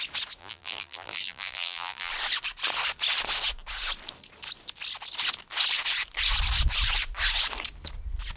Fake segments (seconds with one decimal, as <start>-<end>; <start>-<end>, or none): 0.4-2.1